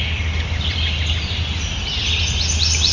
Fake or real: real